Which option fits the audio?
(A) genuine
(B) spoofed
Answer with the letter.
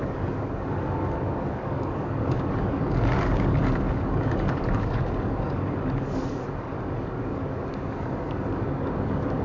B